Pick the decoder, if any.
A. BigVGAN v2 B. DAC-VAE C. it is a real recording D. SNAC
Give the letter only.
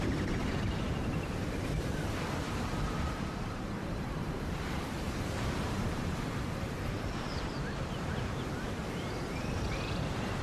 A